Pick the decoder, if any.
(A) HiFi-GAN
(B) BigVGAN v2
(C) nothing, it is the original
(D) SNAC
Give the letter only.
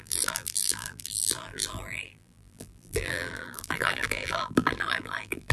B